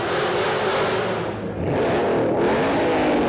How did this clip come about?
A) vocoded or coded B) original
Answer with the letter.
B